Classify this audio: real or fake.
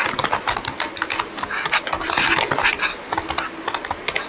real